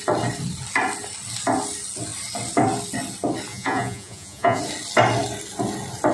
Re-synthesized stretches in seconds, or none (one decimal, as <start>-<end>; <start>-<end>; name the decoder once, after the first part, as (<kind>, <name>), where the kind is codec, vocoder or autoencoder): 3.5-4.6 (vocoder, Vocos)